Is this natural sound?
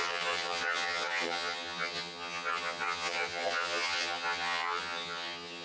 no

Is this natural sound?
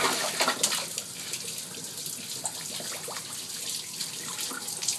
yes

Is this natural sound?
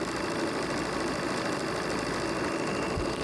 yes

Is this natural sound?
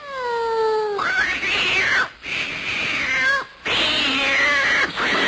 yes